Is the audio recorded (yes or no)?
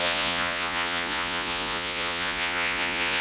no